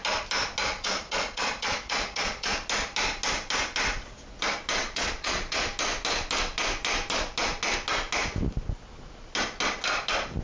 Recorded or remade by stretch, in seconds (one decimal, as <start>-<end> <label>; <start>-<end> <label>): 0.0-0.7 recorded; 0.7-2.6 remade; 2.6-4.8 recorded; 4.8-5.6 remade; 5.6-10.4 recorded